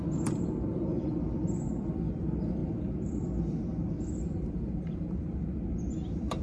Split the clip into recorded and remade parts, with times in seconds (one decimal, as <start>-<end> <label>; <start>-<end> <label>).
0.0-6.4 recorded